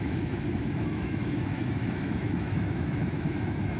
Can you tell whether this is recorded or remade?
remade